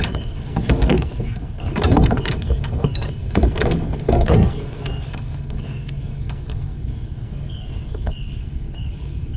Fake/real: fake